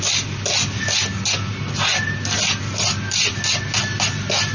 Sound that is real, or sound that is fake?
real